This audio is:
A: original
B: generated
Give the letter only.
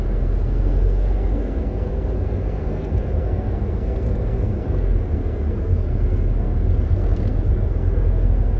B